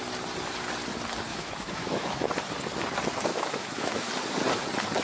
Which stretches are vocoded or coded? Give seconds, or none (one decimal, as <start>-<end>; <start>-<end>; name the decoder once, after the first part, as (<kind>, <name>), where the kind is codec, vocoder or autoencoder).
1.3-2.3 (autoencoder, DAC-VAE); 3.3-4.1